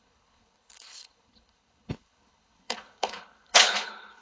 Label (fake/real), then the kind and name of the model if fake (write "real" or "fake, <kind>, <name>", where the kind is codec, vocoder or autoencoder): fake, codec, HILCodec